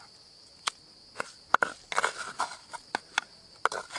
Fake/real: real